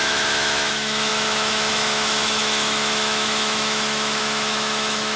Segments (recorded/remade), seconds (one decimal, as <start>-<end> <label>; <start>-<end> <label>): 0.0-5.2 remade